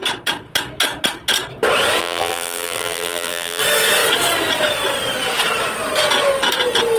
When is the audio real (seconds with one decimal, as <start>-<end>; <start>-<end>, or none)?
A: 0.0-2.0; 3.6-7.0